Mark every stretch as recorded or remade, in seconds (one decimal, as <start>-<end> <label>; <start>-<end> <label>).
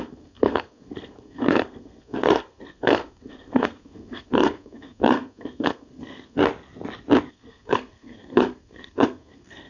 0.0-6.4 remade; 6.4-7.3 recorded; 7.3-9.7 remade